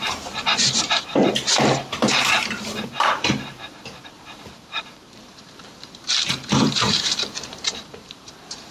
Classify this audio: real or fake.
fake